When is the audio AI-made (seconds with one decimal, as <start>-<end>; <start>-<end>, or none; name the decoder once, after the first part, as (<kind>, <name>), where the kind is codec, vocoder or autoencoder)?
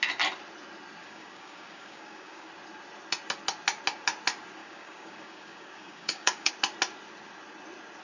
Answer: 1.0-2.5 (codec, DAC); 4.6-6.5